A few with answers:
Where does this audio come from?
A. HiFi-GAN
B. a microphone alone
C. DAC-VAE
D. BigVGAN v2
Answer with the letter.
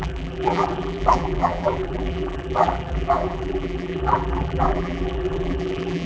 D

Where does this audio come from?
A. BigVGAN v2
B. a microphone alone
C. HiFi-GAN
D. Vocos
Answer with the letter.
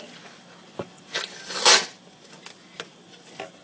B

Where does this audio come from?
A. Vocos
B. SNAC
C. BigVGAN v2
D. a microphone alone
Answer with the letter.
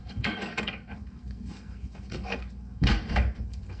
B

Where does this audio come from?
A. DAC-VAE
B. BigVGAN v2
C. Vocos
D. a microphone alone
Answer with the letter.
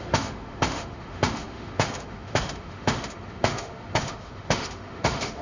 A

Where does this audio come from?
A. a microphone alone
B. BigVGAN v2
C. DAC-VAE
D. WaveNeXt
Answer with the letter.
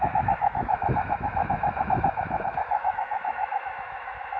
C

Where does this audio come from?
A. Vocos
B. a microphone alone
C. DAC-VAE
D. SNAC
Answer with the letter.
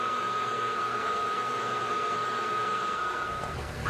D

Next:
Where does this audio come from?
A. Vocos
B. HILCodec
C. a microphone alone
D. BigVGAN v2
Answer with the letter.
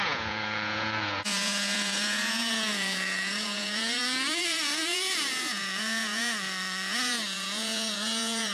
A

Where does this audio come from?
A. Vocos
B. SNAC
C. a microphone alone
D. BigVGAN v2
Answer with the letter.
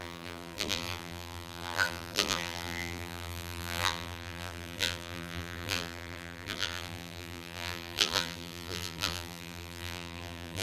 D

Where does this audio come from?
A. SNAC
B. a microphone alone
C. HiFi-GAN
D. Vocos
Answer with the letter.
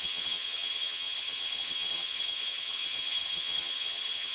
C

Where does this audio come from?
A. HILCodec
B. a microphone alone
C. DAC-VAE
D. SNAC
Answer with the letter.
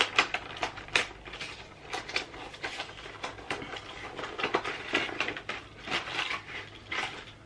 B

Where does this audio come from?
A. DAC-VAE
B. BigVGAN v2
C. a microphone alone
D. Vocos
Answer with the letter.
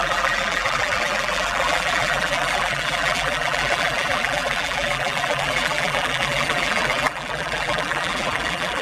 B